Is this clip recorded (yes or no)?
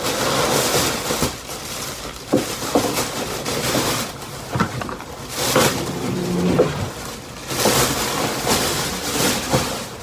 yes